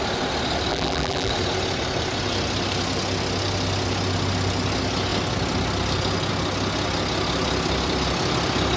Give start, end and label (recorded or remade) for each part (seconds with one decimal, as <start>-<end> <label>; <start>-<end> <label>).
0.0-0.7 recorded; 0.7-1.3 remade; 1.3-8.8 recorded